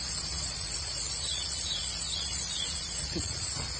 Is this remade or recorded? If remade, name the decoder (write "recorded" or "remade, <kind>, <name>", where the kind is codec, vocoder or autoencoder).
remade, vocoder, Vocos